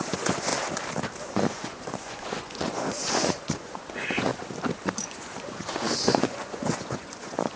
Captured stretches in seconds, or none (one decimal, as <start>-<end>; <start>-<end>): 0.5-1.2; 4.3-5.0